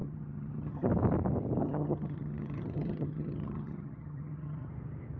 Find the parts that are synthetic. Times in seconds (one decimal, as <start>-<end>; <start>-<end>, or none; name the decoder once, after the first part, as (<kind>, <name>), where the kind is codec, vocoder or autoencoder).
0.0-0.9 (vocoder, HiFi-GAN); 1.6-4.7